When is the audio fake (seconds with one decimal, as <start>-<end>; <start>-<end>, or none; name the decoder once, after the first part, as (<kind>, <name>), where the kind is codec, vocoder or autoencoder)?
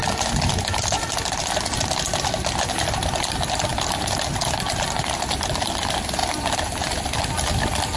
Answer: none